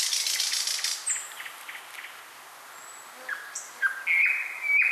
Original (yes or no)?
yes